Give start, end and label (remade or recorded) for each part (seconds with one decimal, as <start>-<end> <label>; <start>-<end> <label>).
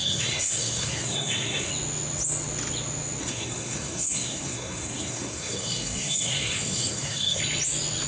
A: 0.0-1.7 remade; 1.7-3.2 recorded; 3.2-7.4 remade; 7.4-8.1 recorded